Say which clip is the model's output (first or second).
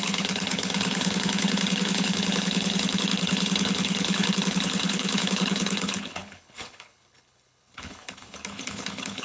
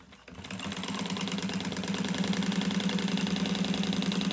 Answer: first